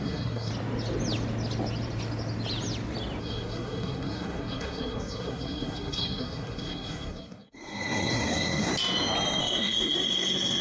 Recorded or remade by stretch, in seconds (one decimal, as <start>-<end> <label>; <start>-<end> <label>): 0.0-0.5 remade; 0.5-3.2 recorded; 3.2-8.7 remade; 8.7-9.4 recorded; 9.4-10.6 remade